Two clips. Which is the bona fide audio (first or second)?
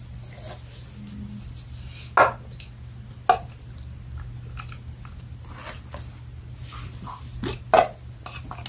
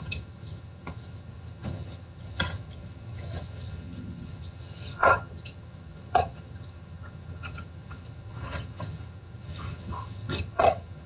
first